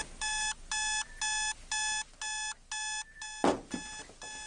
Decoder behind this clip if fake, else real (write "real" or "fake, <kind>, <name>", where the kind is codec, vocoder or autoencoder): real